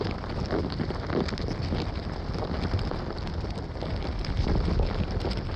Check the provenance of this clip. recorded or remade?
recorded